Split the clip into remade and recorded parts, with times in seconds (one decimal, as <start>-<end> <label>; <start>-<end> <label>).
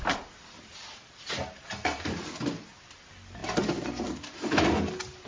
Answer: 0.0-5.3 recorded